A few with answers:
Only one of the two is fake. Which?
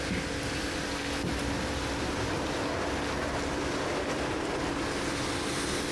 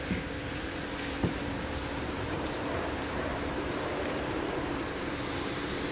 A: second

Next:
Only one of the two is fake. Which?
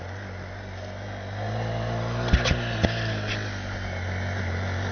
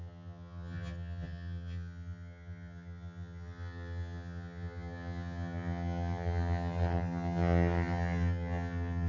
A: second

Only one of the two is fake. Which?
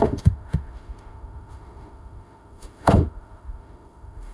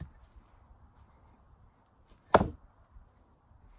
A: first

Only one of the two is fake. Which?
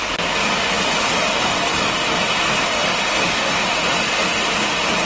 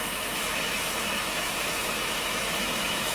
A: second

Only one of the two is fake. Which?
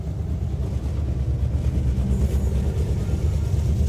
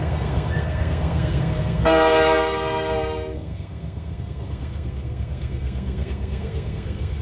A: second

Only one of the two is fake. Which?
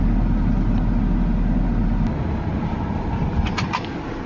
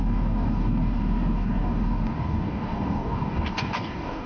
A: second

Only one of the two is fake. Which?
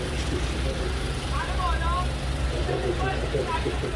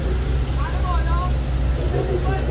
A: first